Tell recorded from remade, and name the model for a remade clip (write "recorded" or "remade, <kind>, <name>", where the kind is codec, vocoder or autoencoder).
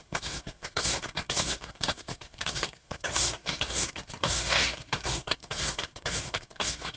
remade, codec, SNAC